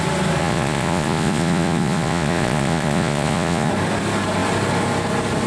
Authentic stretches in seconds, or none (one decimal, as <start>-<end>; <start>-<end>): 0.0-0.4; 3.7-5.5

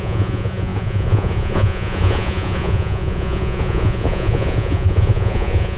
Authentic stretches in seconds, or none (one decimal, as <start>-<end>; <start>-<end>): none

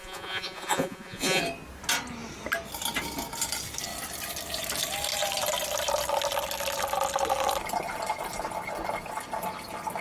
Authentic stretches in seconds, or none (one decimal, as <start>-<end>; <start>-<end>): 1.4-10.0

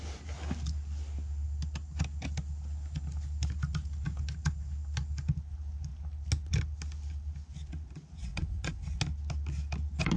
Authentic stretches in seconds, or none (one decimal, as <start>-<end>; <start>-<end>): 0.0-8.2; 9.0-10.2

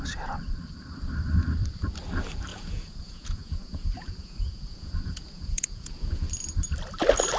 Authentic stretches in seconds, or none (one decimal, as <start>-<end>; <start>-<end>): 0.0-2.5; 6.3-7.4

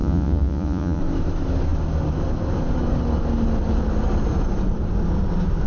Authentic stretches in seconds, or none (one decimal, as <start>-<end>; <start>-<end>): 1.0-5.7

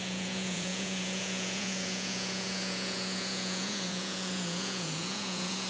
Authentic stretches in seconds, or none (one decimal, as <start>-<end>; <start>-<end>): none

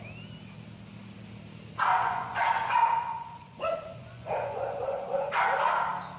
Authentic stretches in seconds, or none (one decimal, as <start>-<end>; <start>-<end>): 0.0-1.9; 5.3-6.2